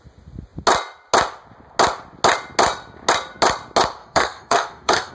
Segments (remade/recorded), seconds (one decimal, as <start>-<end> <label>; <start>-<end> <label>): 0.0-4.0 recorded; 4.0-5.1 remade